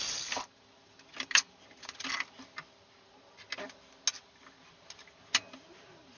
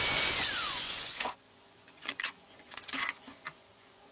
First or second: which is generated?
second